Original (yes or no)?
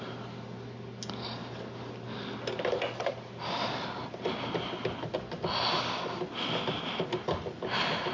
yes